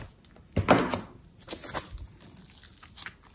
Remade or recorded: recorded